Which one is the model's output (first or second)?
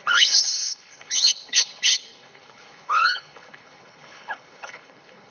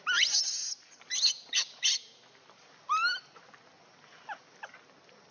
first